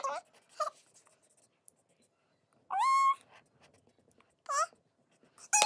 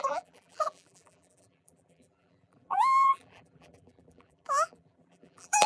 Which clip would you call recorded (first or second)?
first